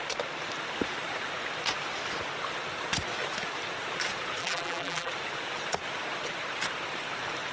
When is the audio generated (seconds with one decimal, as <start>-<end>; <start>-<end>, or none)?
4.4-5.1